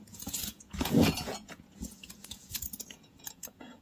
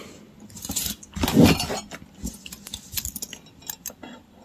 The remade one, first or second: first